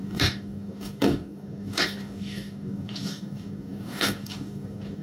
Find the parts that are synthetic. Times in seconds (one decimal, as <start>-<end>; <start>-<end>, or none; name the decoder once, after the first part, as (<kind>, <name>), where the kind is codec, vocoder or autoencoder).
0.0-5.0 (codec, DAC)